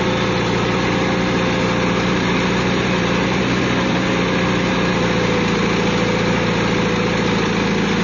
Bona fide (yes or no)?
yes